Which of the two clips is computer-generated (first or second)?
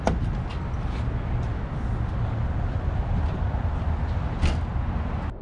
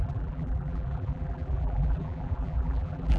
second